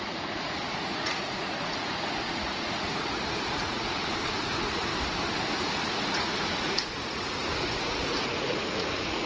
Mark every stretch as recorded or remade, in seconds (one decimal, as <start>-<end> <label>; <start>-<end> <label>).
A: 0.0-4.9 remade; 4.9-5.7 recorded; 5.7-9.3 remade

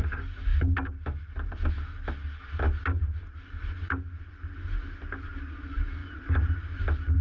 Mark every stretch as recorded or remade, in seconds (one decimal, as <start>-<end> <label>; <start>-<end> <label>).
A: 0.0-7.2 recorded

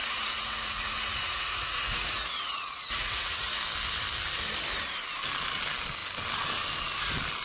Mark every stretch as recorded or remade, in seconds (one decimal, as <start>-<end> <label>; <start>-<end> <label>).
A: 0.0-3.6 remade; 3.6-7.4 recorded

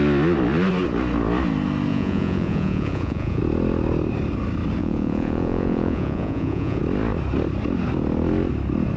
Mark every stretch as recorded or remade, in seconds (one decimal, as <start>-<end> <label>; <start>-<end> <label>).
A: 0.0-1.9 recorded; 1.9-3.4 remade; 3.4-4.8 recorded; 4.8-6.8 remade; 6.8-9.0 recorded

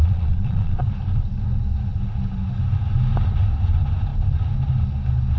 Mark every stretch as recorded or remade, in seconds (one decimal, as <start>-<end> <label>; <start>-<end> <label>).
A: 0.0-0.8 remade; 0.8-5.4 recorded